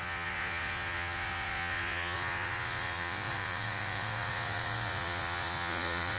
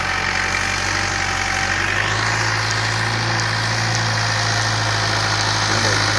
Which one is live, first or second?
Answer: second